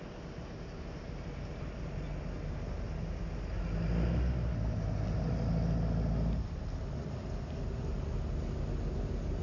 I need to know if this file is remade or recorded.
recorded